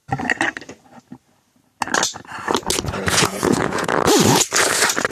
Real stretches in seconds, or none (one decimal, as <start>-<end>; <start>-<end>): 0.0-3.1; 3.9-5.1